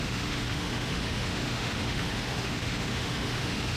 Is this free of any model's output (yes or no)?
no